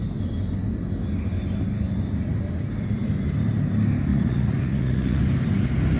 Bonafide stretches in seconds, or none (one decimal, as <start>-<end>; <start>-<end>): 0.0-4.1; 5.2-6.0